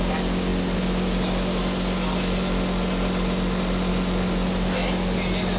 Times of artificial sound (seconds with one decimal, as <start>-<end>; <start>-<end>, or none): none